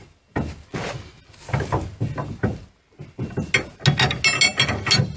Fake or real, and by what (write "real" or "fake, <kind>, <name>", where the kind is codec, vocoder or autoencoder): real